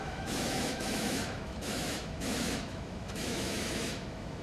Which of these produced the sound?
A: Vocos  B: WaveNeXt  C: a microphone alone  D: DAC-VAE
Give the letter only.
D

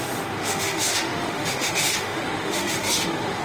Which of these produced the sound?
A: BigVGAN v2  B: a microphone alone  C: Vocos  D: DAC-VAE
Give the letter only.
D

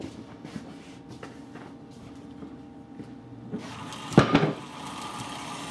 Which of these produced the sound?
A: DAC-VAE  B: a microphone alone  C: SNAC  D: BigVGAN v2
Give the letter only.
B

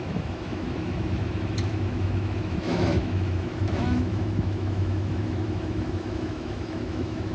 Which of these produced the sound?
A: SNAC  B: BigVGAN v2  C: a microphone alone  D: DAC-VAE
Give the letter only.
D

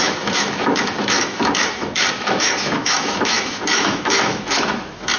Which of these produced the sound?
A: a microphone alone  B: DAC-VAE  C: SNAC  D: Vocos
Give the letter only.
B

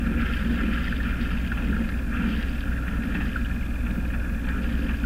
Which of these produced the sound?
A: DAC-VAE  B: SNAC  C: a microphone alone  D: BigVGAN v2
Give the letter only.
C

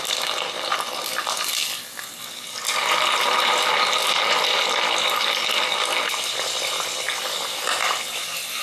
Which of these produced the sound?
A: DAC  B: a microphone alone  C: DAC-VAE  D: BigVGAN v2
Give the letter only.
B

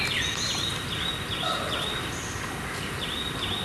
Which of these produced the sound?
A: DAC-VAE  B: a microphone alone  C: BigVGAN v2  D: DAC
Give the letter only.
B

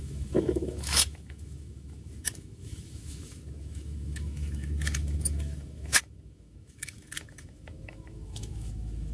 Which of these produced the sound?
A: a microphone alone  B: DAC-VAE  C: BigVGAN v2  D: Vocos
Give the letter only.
B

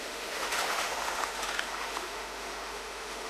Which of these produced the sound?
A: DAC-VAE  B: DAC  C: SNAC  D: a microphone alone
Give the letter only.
A